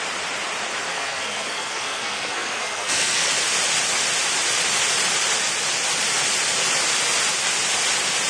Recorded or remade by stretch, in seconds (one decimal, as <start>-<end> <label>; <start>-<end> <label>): 0.0-0.9 recorded; 0.9-3.3 remade; 3.3-8.3 recorded